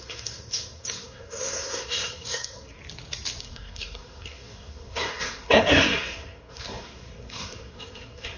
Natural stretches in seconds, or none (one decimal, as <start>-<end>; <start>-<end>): 2.8-3.4